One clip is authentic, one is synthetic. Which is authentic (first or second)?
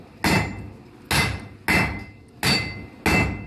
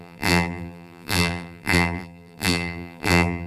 first